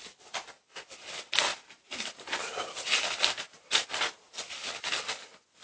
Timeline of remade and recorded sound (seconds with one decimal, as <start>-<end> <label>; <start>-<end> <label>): 0.0-5.6 recorded